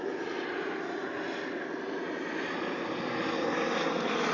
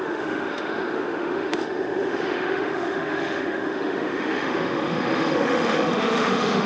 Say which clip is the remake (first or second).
second